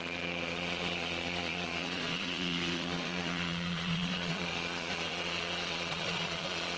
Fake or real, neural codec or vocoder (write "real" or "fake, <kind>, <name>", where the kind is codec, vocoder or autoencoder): fake, vocoder, Vocos